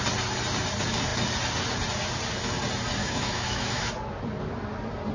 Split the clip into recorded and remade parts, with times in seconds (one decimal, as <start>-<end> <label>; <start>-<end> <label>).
0.0-3.0 recorded; 3.0-3.9 remade; 3.9-5.1 recorded